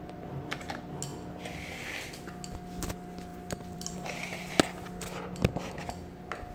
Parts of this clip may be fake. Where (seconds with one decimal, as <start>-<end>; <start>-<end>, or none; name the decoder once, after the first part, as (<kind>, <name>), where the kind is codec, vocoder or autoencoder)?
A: 3.3-4.5 (vocoder, BigVGAN v2)